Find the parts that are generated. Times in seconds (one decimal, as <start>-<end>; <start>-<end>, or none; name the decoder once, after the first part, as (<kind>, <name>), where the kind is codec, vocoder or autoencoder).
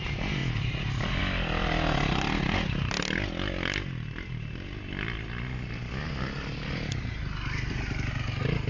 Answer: none